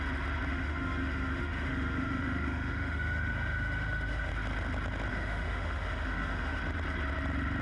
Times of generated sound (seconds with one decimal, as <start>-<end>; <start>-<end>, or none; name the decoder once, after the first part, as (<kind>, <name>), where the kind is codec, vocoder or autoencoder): 0.5-4.3 (autoencoder, DAC-VAE); 5.1-6.6